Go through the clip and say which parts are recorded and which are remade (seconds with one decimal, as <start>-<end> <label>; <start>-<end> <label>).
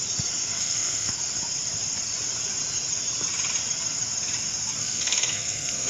0.0-0.6 recorded; 0.6-1.1 remade; 1.1-4.8 recorded; 4.8-5.9 remade